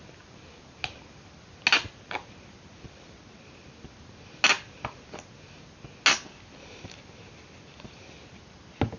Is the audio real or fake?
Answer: real